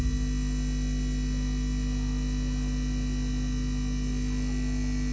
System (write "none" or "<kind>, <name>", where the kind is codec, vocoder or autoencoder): none